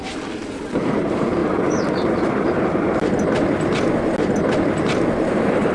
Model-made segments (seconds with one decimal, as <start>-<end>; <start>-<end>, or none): 0.0-1.4; 4.8-5.7